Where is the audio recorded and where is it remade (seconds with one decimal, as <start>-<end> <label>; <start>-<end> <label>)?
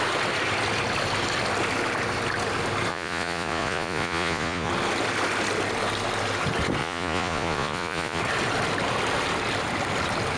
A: 0.0-2.9 recorded; 2.9-4.7 remade; 4.7-6.8 recorded; 6.8-8.2 remade; 8.2-10.4 recorded